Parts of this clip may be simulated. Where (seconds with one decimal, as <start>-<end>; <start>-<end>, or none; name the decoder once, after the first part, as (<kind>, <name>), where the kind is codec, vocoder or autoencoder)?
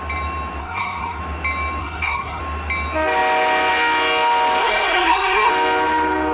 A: 0.6-1.2 (codec, SNAC); 1.8-2.4; 4.6-5.5